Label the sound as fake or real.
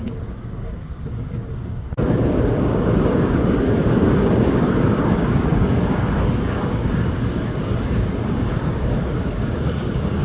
fake